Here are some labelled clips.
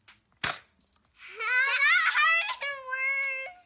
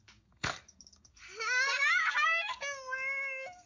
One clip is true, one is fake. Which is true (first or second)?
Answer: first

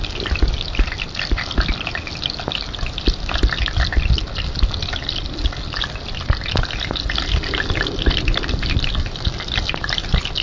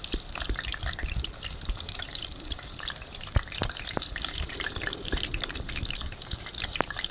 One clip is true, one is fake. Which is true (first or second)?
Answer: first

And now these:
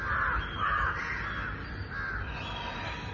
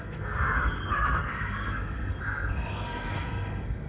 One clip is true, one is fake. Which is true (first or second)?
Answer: first